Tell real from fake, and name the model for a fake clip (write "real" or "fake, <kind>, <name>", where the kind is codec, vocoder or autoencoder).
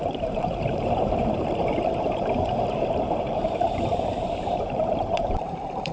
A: fake, vocoder, BigVGAN v2